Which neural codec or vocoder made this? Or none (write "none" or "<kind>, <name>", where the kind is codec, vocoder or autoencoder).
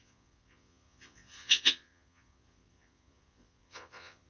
vocoder, Vocos